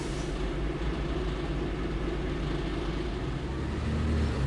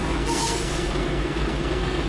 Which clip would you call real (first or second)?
first